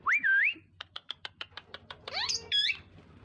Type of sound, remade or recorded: remade